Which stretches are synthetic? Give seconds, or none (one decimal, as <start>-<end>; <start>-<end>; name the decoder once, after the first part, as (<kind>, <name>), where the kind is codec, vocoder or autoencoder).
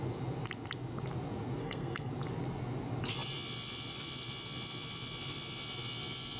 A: 1.6-2.1 (codec, SNAC)